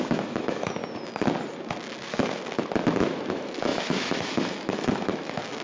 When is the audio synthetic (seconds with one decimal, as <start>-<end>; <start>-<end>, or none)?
0.0-0.8; 3.3-5.6